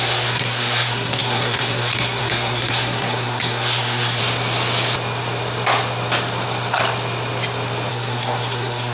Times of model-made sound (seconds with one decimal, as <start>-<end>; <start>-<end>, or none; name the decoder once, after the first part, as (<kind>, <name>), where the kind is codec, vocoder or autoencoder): 0.0-4.2 (codec, SNAC); 7.9-8.9